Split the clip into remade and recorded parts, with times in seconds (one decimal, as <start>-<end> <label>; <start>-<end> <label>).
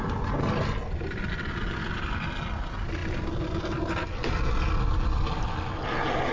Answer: 0.0-6.3 recorded